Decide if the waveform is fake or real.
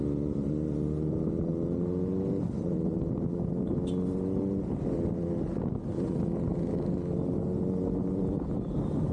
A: real